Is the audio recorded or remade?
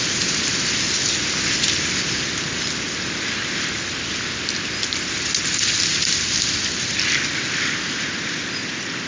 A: recorded